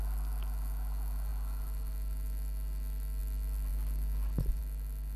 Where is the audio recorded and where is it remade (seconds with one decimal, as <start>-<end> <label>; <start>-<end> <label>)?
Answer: 0.0-5.2 recorded